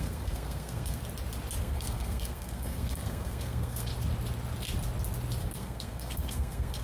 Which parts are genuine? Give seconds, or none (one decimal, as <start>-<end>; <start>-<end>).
1.0-1.6; 3.9-5.4